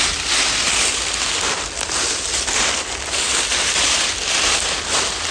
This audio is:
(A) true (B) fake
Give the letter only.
A